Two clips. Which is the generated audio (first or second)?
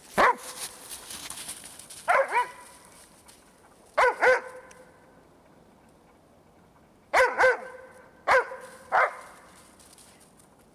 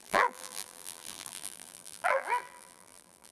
second